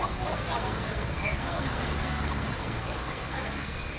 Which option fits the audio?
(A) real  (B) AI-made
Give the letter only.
B